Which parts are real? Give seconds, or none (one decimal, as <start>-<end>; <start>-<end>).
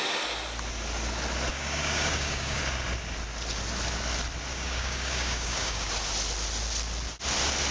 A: 0.0-1.5; 2.6-4.5; 5.9-7.7